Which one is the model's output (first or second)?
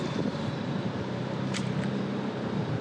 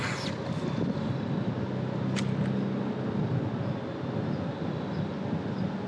first